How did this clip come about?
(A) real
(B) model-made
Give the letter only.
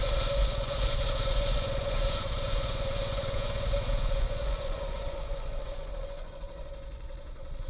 B